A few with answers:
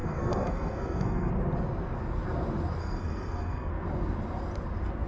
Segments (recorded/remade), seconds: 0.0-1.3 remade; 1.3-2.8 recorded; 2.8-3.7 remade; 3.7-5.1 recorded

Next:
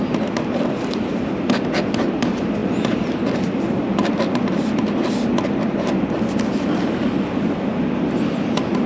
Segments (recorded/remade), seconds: 0.0-8.9 recorded

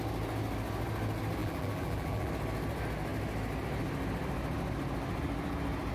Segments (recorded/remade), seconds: 0.0-1.4 recorded; 1.4-2.3 remade; 2.3-5.9 recorded

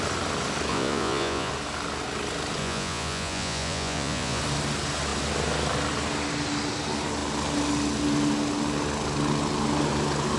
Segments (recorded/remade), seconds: 0.0-0.7 recorded; 0.7-1.5 remade; 1.5-2.6 recorded; 2.6-4.4 remade; 4.4-10.4 recorded

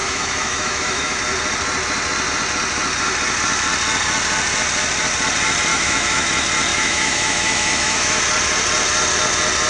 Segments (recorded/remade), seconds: 0.0-1.2 remade; 1.2-5.7 recorded; 5.7-6.3 remade; 6.3-6.7 recorded; 6.7-8.2 remade; 8.2-9.7 recorded

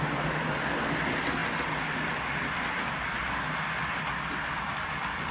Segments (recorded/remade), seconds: 0.0-5.3 recorded

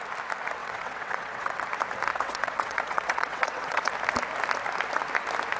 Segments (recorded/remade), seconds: 0.0-0.6 recorded; 0.6-1.6 remade; 1.6-2.1 recorded; 2.1-3.9 remade; 3.9-5.6 recorded

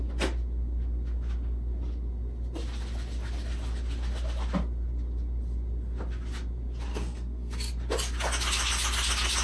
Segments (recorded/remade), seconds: 0.0-6.9 recorded; 6.9-7.7 remade; 7.7-9.4 recorded